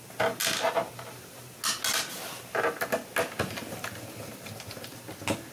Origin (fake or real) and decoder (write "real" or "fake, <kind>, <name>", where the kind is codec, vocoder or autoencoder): real